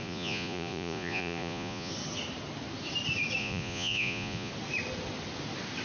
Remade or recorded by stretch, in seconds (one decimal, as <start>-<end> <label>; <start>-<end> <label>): 0.0-1.9 remade; 1.9-3.4 recorded; 3.4-4.5 remade; 4.5-5.8 recorded